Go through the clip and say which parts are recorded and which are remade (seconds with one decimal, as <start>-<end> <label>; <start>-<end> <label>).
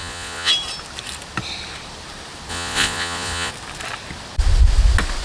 0.0-0.5 remade; 0.5-2.5 recorded; 2.5-3.5 remade; 3.5-5.2 recorded